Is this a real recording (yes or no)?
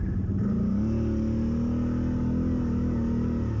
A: yes